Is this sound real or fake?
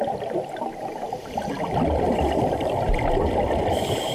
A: fake